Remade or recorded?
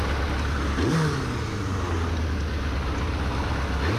recorded